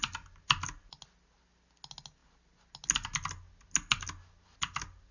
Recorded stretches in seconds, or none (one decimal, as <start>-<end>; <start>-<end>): 0.0-5.1